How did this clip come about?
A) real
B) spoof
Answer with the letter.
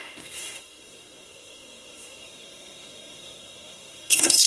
B